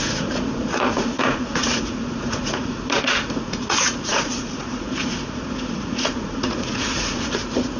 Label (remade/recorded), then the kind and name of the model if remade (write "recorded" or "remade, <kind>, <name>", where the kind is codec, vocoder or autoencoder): remade, vocoder, Vocos